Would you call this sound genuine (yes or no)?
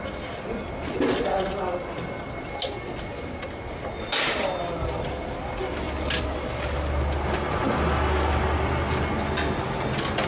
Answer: yes